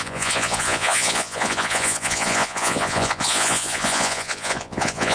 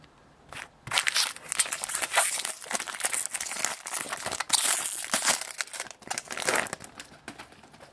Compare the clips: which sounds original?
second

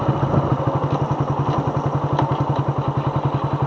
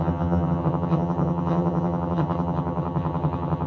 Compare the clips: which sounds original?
first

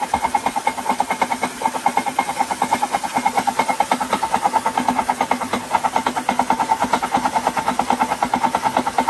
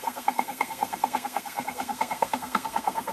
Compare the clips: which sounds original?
first